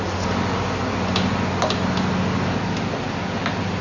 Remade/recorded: recorded